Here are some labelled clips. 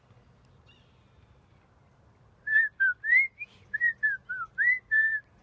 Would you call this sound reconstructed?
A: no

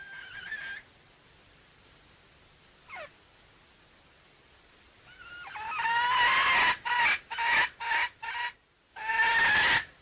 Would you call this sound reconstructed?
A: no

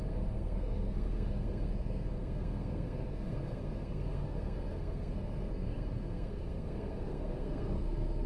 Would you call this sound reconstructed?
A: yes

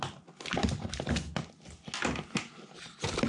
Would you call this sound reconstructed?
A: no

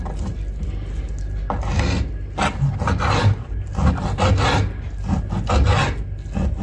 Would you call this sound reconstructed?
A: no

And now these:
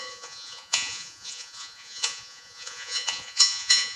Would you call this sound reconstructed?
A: yes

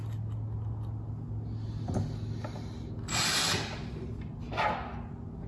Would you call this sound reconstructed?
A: no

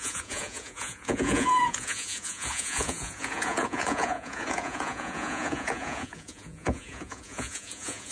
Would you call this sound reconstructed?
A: yes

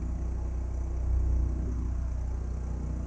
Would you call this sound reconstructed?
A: no